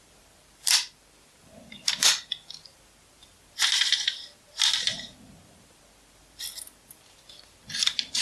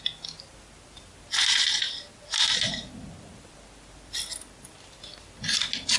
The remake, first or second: first